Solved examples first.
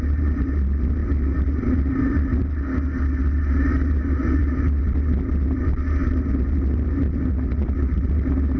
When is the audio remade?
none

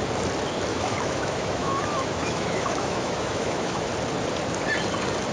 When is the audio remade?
0.7-3.9

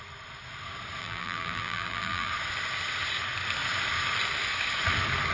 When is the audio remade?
1.0-2.3

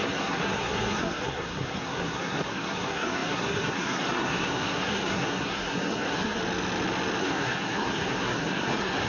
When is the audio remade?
0.0-6.4; 7.2-9.1

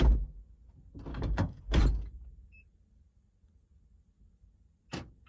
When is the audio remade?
1.1-1.6

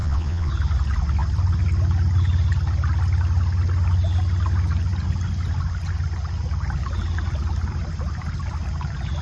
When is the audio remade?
0.0-0.5